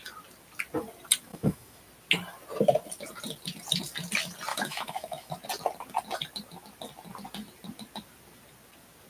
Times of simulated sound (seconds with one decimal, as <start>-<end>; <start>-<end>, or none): 1.3-1.8; 4.5-5.3